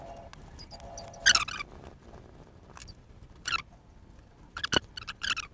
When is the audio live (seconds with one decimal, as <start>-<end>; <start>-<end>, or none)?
0.0-5.5

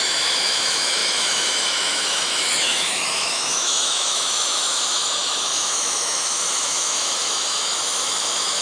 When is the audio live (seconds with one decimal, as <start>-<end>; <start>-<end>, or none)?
none

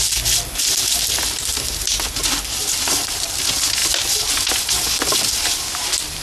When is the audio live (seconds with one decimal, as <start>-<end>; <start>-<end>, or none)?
0.0-6.2

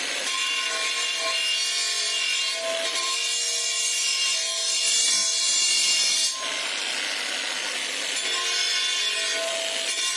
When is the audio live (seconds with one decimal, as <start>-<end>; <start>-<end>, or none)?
0.0-10.2